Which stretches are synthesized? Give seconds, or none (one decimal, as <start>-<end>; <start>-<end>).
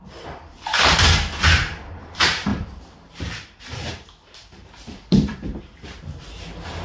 0.0-0.7; 1.9-6.8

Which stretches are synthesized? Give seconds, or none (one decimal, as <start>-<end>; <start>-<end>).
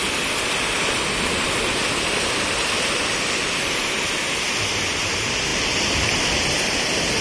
0.0-0.7; 1.8-4.1